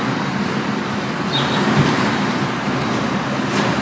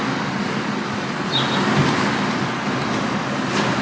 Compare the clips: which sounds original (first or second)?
second